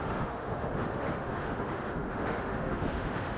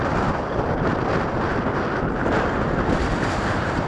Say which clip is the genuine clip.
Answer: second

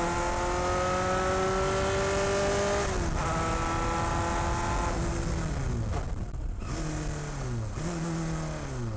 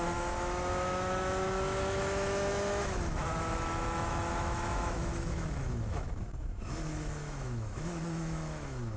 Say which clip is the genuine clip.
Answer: first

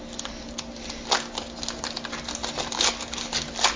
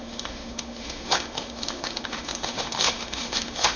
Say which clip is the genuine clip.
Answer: first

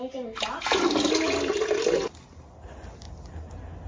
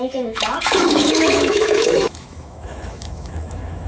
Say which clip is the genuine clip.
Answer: first